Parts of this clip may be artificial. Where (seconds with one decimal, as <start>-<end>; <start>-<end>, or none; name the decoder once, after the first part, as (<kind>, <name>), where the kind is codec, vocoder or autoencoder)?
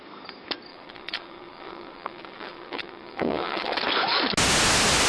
0.7-3.8 (vocoder, WaveNeXt)